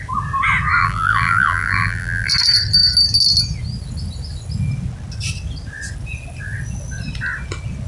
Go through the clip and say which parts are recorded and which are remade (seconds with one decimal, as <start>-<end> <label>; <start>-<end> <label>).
0.0-0.8 recorded; 0.8-2.3 remade; 2.3-7.9 recorded